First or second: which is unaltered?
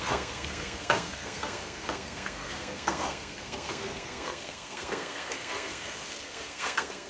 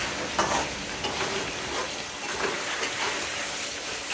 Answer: second